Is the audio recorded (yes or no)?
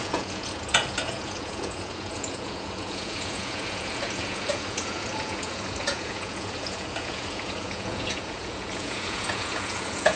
no